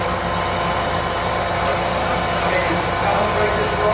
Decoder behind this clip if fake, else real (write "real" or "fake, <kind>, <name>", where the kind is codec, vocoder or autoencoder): real